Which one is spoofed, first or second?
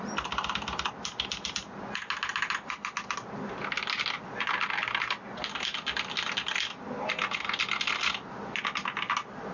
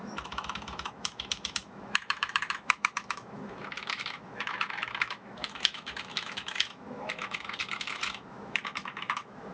second